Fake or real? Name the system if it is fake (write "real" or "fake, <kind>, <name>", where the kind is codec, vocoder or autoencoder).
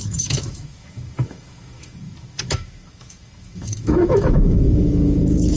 fake, autoencoder, DAC-VAE